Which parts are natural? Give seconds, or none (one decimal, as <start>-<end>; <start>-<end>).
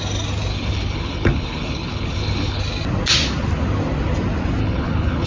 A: 0.0-0.5; 2.6-4.6